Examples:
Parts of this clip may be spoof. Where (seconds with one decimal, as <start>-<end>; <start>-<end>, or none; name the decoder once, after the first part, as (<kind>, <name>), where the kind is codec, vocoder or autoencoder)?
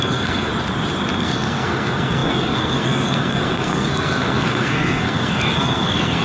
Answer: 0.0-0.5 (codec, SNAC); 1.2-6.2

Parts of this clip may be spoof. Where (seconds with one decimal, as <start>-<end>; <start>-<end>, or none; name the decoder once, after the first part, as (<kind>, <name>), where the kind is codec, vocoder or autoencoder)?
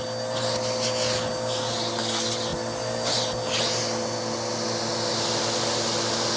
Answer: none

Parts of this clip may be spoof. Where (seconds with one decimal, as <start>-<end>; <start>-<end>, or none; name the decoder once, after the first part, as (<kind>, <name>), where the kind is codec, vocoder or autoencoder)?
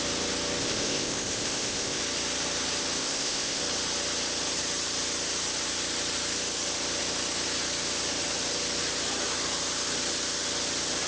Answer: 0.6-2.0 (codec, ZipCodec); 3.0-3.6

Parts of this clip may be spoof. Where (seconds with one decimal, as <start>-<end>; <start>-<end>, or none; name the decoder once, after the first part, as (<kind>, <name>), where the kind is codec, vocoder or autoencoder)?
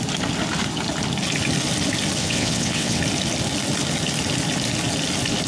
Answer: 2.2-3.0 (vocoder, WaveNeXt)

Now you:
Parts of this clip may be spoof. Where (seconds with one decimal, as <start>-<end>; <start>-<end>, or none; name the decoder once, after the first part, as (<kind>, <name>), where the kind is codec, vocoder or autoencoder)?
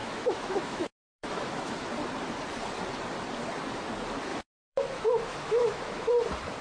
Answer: 0.0-1.7 (autoencoder, DAC-VAE); 4.3-6.1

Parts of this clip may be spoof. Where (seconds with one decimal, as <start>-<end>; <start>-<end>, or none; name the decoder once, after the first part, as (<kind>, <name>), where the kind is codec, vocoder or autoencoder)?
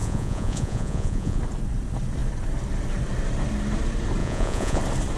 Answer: 0.0-1.4 (vocoder, Vocos); 4.2-4.8